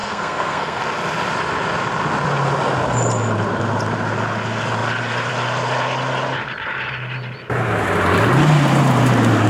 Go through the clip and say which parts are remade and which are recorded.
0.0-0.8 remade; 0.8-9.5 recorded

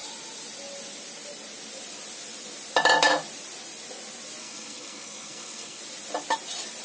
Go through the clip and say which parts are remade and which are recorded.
0.0-4.4 recorded; 4.4-5.8 remade; 5.8-6.8 recorded

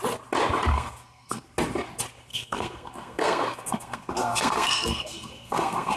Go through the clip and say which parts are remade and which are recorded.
0.0-0.7 recorded; 0.7-1.4 remade; 1.4-2.3 recorded; 2.3-6.0 remade

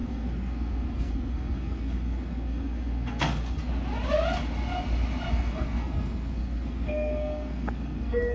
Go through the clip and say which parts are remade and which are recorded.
0.0-3.6 remade; 3.6-5.3 recorded; 5.3-8.3 remade

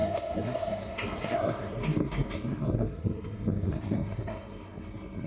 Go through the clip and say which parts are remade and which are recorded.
0.0-5.3 remade

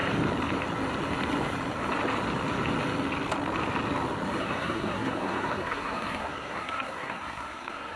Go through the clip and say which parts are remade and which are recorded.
0.0-4.4 recorded; 4.4-8.0 remade